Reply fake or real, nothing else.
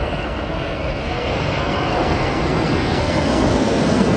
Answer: fake